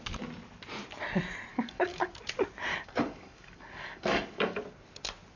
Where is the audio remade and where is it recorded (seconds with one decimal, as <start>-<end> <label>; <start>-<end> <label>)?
0.0-1.5 recorded; 1.5-2.1 remade; 2.1-2.7 recorded; 2.7-4.6 remade; 4.6-5.4 recorded